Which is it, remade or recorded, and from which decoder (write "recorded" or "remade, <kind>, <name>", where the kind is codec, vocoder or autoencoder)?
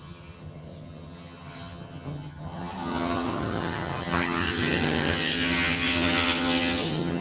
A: remade, vocoder, HiFi-GAN